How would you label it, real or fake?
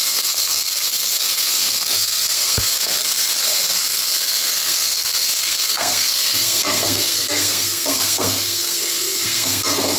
fake